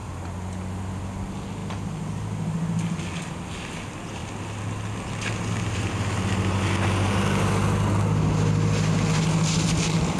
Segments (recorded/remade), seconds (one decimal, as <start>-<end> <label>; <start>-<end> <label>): 0.0-10.2 recorded